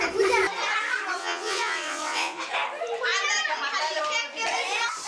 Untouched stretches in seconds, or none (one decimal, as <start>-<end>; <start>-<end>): 0.0-1.2; 2.4-5.1